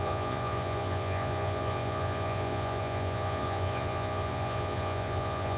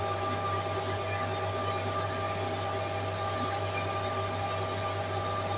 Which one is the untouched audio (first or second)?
second